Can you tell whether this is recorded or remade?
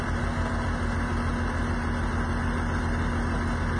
recorded